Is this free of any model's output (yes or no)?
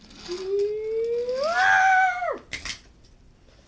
yes